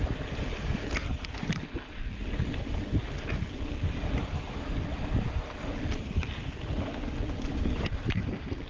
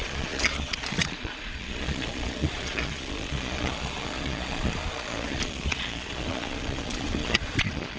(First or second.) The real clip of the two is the first